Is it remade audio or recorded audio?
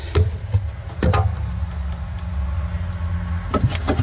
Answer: recorded